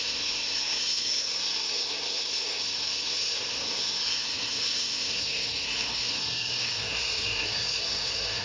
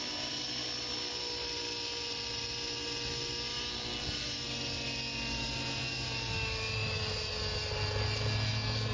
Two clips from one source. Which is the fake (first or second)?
first